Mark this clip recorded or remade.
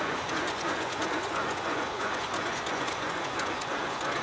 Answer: remade